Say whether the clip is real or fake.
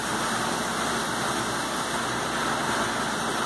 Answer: real